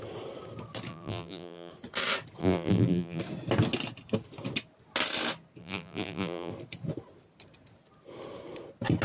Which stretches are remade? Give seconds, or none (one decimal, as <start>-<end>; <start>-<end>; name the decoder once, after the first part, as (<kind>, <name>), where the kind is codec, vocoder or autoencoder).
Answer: 0.9-1.7 (vocoder, BigVGAN v2); 2.4-3.2; 5.6-6.5